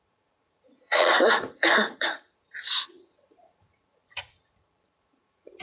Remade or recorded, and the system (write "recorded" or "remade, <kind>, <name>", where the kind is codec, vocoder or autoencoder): remade, vocoder, Vocos